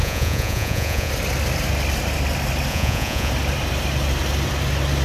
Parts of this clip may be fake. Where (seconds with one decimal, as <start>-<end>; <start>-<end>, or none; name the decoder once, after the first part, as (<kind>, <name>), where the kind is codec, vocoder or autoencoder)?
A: 0.0-1.1 (vocoder, Vocos); 2.7-3.3